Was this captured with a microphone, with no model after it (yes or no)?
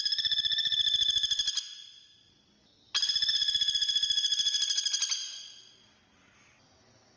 yes